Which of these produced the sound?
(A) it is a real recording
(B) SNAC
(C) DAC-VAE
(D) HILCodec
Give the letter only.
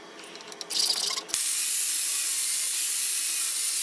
A